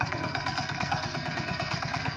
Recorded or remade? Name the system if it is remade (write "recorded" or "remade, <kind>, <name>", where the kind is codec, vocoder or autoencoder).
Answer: remade, codec, SNAC